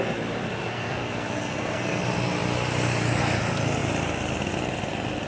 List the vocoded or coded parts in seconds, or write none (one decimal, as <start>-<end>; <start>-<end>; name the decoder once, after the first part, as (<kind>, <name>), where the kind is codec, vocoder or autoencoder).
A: 0.5-2.0 (codec, SNAC)